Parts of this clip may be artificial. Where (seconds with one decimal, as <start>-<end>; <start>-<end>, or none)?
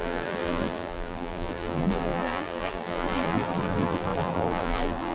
0.0-5.1